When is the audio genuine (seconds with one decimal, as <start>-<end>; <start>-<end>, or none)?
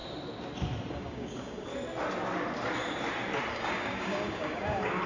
0.0-0.9; 1.7-3.5